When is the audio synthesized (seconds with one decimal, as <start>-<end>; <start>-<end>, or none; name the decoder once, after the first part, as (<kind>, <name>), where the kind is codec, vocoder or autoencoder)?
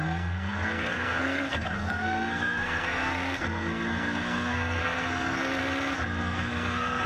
0.0-5.6 (codec, SNAC); 6.2-7.1